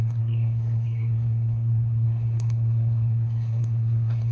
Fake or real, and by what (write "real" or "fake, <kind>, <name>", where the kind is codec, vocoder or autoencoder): fake, codec, SNAC